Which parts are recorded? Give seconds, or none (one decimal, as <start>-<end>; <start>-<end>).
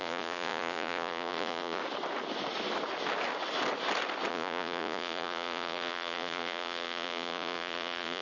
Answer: 1.8-4.3